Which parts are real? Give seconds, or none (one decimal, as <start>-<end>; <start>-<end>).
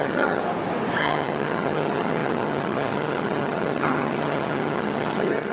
0.4-1.0